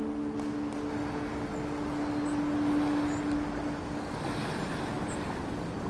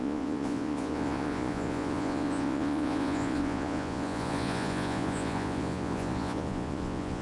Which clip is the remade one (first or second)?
second